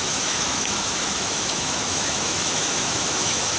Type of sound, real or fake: fake